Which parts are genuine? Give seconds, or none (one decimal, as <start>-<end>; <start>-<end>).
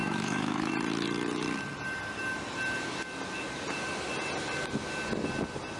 0.7-5.8